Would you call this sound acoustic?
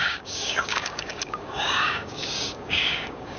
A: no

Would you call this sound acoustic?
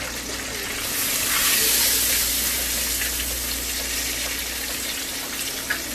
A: yes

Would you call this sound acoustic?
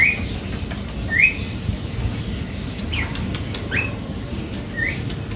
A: yes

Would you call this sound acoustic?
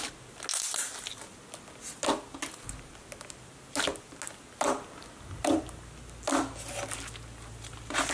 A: yes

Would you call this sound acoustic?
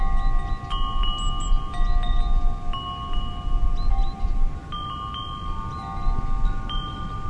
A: yes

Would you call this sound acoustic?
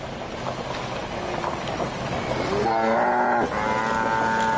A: yes